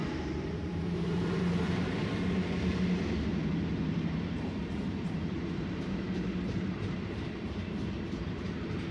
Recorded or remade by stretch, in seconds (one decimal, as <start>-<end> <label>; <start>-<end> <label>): 0.0-8.9 remade